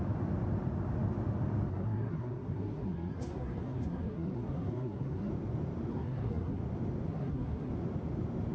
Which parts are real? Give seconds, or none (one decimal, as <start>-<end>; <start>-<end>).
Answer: 0.0-1.7; 5.3-5.9; 6.6-7.1; 7.7-8.5